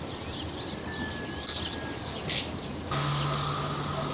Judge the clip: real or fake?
real